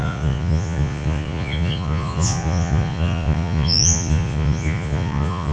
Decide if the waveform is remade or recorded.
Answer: remade